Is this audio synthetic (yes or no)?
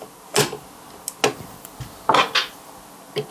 no